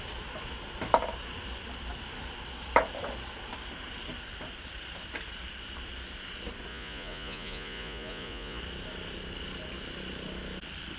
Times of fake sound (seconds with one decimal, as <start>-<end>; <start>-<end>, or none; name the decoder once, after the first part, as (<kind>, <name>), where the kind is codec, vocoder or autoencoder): 6.7-8.6 (vocoder, Vocos)